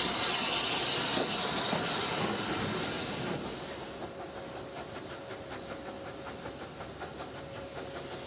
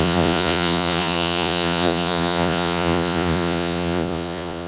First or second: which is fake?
second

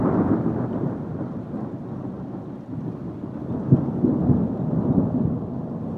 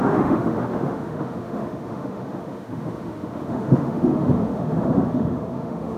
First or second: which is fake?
second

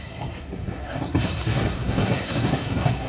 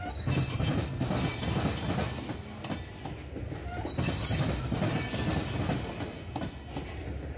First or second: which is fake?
first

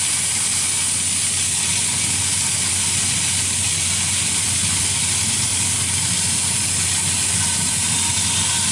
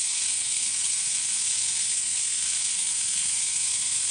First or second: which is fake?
second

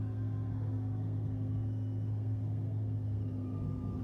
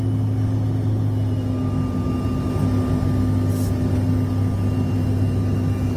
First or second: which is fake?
first